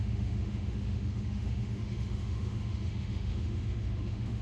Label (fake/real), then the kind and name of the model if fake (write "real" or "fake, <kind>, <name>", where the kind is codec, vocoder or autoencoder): fake, autoencoder, DAC-VAE